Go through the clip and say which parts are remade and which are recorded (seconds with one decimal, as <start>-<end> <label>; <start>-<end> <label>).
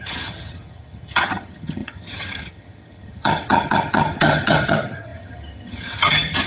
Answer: 0.0-6.5 remade